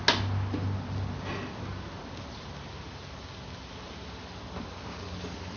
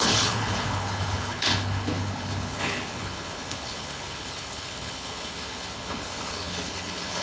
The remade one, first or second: second